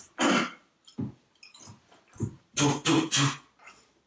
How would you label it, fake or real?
real